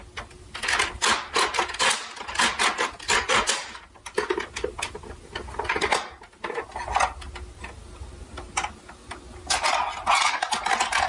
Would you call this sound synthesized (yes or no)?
no